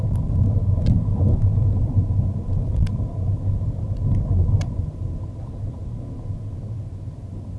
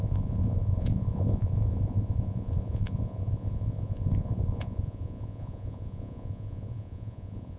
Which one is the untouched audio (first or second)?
first